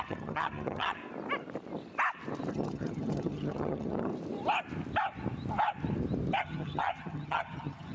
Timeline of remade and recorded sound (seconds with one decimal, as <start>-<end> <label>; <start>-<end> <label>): 0.0-1.0 remade; 1.0-2.5 recorded; 2.5-4.1 remade; 4.1-6.4 recorded; 6.4-7.9 remade